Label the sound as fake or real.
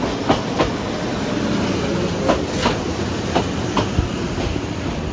real